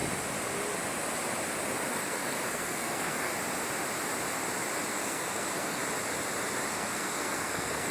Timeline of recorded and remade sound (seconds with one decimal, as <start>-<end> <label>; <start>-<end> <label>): 0.0-1.9 recorded; 1.9-3.3 remade; 3.3-4.9 recorded; 4.9-5.8 remade; 5.8-6.7 recorded; 6.7-7.9 remade